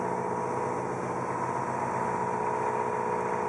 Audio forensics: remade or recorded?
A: recorded